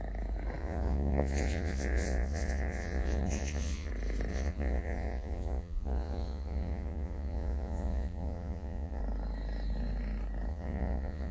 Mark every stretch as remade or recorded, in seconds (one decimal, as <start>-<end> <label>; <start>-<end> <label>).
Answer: 0.0-0.6 recorded; 0.6-3.9 remade; 3.9-4.3 recorded; 4.3-9.0 remade; 9.0-10.5 recorded; 10.5-11.3 remade